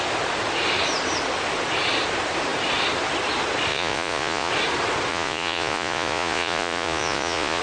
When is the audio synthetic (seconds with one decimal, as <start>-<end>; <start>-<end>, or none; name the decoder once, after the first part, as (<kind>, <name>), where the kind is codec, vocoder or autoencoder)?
3.7-4.5 (vocoder, Vocos); 5.1-7.6